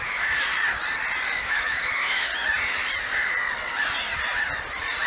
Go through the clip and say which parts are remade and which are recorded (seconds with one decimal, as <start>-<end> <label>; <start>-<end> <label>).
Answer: 0.0-0.5 remade; 0.5-1.4 recorded; 1.4-2.3 remade; 2.3-5.1 recorded